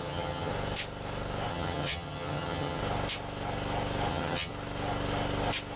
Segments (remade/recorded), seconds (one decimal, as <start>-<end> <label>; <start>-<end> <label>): 0.0-0.5 remade; 0.5-1.5 recorded; 1.5-2.8 remade; 2.8-4.1 recorded; 4.1-4.5 remade; 4.5-5.8 recorded